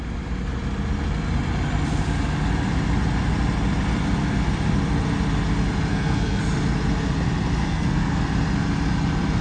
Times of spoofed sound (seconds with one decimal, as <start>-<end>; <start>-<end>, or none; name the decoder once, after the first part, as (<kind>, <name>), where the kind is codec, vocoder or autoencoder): 5.9-6.4 (codec, SNAC); 7.6-8.2